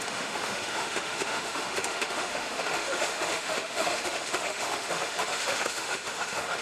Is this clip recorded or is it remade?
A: remade